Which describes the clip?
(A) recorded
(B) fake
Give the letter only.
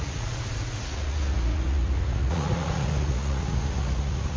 B